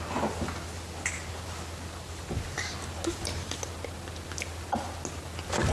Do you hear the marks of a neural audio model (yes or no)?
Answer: no